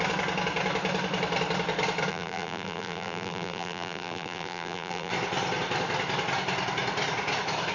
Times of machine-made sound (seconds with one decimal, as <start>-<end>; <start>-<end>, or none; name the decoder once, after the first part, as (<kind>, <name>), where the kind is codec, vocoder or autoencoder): 2.1-5.1 (vocoder, BigVGAN v2)

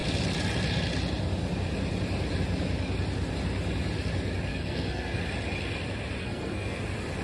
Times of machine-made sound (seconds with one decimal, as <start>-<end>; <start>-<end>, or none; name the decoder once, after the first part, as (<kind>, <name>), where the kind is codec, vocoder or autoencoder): 4.5-5.2 (codec, SNAC); 6.2-6.8

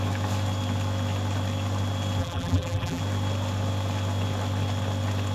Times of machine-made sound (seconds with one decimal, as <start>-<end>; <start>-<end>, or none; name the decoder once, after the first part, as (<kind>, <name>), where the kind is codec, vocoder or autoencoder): 2.2-3.0 (vocoder, BigVGAN v2)